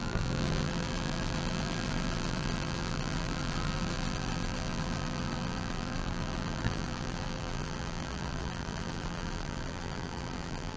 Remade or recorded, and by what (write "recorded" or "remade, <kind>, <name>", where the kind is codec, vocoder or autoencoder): remade, vocoder, BigVGAN v2